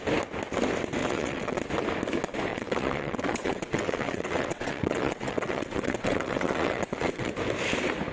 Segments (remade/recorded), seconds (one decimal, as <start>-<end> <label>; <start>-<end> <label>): 0.0-1.0 recorded; 1.0-1.6 remade; 1.6-2.5 recorded; 2.5-7.3 remade; 7.3-8.1 recorded